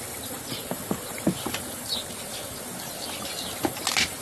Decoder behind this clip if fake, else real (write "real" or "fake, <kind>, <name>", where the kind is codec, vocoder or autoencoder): real